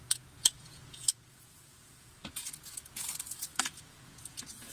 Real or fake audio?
fake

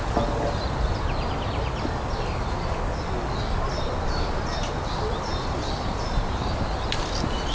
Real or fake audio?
real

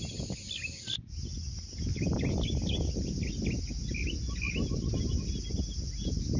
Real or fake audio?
real